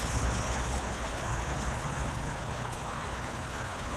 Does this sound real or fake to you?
fake